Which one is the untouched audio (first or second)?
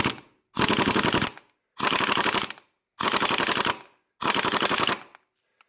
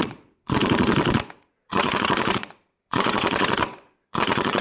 first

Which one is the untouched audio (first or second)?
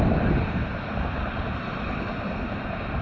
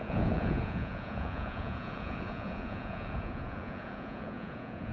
first